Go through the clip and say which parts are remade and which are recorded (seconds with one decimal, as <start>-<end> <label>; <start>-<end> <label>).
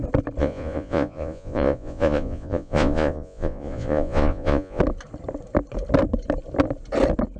0.0-0.4 recorded; 0.4-4.8 remade; 4.8-7.4 recorded